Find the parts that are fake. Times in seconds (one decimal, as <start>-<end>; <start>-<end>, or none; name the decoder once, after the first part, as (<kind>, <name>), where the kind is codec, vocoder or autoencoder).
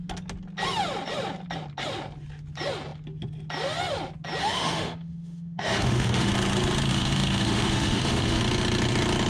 4.4-6.3 (autoencoder, DAC-VAE); 6.9-8.4